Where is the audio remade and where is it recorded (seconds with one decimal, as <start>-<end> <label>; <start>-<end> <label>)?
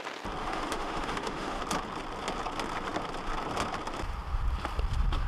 0.0-0.4 recorded; 0.4-1.6 remade; 1.6-5.3 recorded